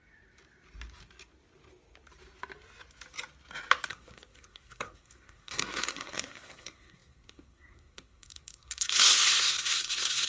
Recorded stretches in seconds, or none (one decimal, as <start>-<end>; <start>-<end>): 0.0-3.9